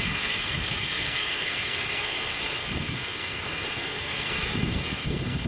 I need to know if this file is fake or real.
fake